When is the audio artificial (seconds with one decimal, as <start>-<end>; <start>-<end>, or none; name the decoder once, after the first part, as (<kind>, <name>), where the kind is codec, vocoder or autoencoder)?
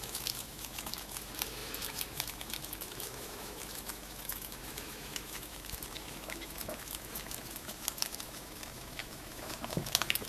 0.0-10.3 (autoencoder, DAC-VAE)